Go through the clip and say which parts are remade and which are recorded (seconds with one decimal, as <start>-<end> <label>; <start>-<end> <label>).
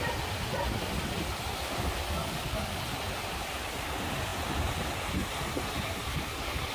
0.0-2.2 recorded; 2.2-2.8 remade; 2.8-6.1 recorded; 6.1-6.7 remade